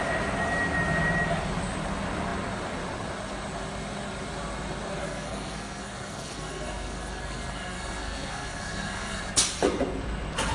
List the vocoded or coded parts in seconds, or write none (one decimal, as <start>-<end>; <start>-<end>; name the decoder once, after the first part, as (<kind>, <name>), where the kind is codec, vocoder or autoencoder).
5.0-9.2 (codec, SNAC)